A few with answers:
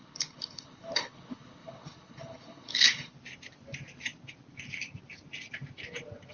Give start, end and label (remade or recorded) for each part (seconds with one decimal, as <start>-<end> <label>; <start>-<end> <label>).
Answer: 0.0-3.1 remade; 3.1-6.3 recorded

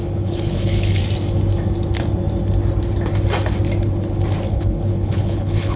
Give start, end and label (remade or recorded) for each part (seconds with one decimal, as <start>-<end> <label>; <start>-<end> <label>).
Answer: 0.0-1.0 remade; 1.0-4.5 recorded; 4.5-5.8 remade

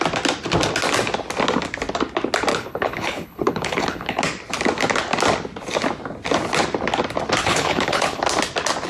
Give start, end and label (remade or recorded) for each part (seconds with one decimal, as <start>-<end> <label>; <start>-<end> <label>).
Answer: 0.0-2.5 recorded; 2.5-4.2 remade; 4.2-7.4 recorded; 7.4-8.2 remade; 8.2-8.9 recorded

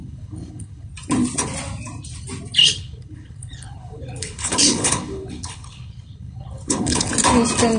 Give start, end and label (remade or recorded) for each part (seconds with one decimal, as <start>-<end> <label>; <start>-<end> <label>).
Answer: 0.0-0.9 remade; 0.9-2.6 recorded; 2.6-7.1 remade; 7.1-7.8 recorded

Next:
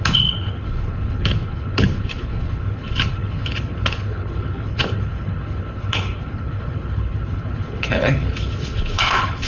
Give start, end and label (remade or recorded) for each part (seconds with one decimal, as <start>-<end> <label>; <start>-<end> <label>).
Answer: 0.0-9.5 remade

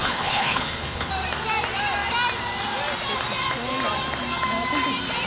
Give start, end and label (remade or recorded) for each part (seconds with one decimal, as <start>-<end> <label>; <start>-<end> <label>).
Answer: 0.0-1.1 remade; 1.1-5.3 recorded

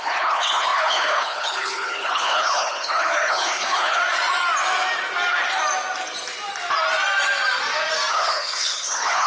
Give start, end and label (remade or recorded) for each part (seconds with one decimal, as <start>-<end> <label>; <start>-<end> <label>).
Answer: 0.0-4.0 remade; 4.0-8.1 recorded; 8.1-9.3 remade

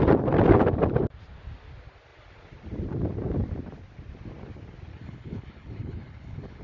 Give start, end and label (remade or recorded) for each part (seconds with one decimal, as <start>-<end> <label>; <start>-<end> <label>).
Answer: 0.0-4.9 recorded; 4.9-6.6 remade